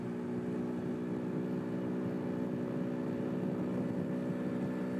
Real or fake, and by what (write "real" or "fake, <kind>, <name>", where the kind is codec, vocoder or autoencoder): real